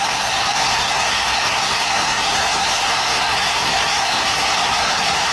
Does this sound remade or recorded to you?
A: remade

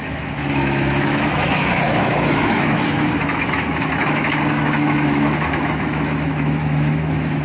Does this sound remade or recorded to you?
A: remade